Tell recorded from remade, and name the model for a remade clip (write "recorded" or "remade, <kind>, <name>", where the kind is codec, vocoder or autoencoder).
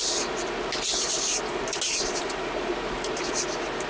recorded